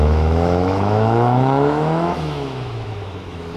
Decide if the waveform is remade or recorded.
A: remade